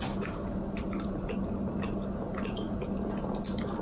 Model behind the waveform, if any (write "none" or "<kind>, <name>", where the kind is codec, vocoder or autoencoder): none